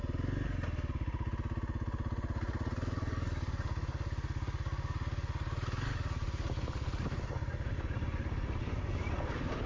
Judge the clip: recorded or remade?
recorded